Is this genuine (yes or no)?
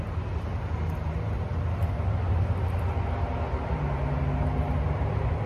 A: yes